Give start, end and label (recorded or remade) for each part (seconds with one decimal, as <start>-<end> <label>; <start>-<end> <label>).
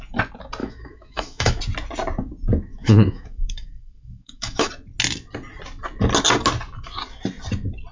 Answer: 0.0-0.6 recorded; 0.6-1.6 remade; 1.6-2.7 recorded; 2.7-4.7 remade; 4.7-7.9 recorded